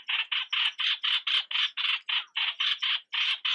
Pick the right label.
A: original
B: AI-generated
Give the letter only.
A